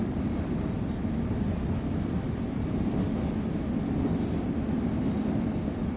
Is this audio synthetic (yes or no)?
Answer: no